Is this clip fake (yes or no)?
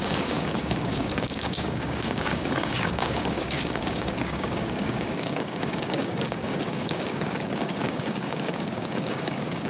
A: yes